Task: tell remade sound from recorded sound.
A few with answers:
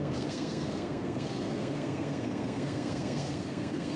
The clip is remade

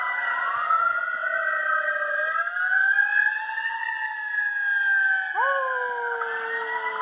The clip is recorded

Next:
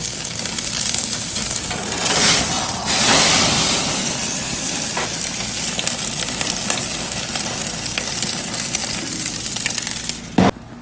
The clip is recorded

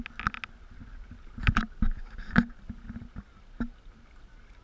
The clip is recorded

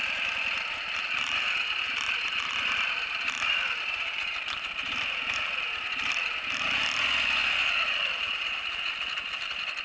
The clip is remade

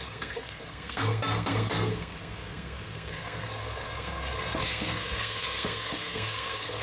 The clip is remade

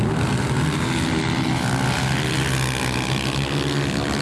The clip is recorded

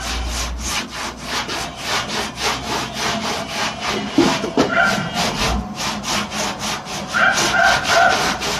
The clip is recorded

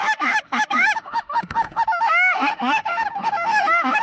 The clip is remade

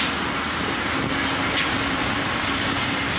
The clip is recorded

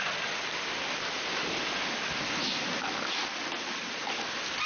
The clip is recorded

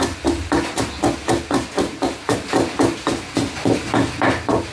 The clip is recorded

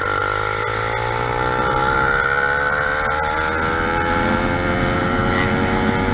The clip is recorded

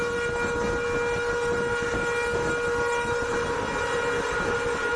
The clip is recorded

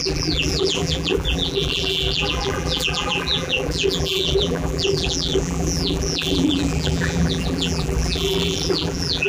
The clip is remade